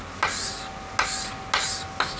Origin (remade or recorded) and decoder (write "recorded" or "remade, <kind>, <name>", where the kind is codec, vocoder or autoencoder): recorded